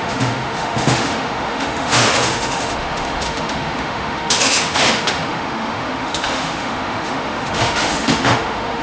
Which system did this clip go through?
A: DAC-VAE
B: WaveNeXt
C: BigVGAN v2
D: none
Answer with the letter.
A